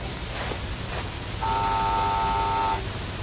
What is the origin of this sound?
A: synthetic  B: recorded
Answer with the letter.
B